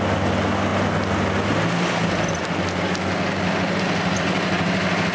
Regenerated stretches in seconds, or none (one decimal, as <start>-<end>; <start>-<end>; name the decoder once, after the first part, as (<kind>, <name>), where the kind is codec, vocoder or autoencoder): none